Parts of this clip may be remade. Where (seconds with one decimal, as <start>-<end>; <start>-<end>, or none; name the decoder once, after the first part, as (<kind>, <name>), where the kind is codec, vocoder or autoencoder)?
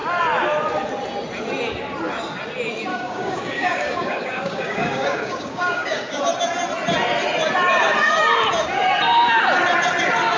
2.9-6.2 (codec, DAC)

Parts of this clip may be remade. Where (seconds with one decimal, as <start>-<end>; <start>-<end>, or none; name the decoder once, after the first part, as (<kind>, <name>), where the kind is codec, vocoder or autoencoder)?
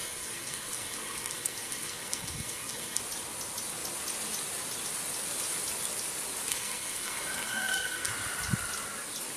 0.0-3.0 (codec, SNAC); 6.5-8.1